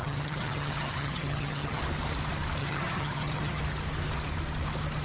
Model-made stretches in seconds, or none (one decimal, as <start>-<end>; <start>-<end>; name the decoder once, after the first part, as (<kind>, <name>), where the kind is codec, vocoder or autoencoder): 0.0-1.8 (vocoder, HiFi-GAN); 2.6-3.6